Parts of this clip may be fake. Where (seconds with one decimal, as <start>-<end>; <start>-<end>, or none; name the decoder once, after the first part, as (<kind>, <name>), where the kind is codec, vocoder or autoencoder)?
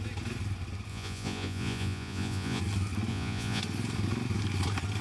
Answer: 0.9-2.6 (vocoder, Vocos); 3.1-3.6